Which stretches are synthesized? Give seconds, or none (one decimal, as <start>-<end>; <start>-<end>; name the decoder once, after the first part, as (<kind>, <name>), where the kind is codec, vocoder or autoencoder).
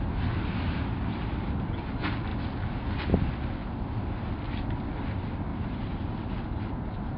5.5-6.6 (vocoder, BigVGAN v2)